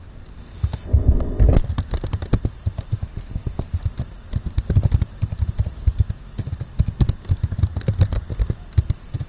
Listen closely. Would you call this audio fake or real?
real